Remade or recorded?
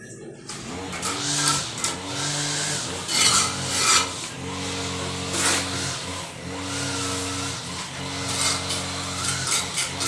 recorded